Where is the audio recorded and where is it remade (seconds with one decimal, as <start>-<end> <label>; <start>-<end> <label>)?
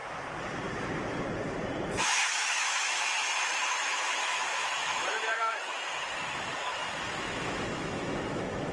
0.0-2.0 recorded; 2.0-8.7 remade